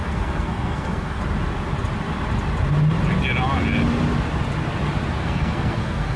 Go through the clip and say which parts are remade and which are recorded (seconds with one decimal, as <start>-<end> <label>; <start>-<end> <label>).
0.0-1.2 remade; 1.2-5.2 recorded; 5.2-6.2 remade